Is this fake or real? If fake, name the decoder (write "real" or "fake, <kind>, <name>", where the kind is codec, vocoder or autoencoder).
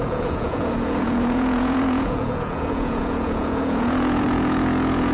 fake, vocoder, Vocos